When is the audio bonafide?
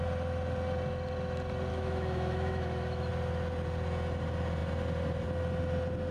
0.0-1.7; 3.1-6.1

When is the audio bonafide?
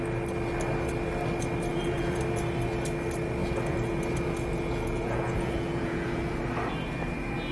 0.0-1.7; 2.2-3.4; 6.4-7.5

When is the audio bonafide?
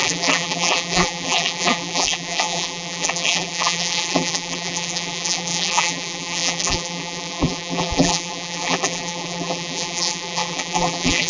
none